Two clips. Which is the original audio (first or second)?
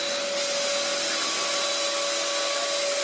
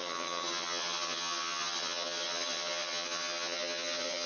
first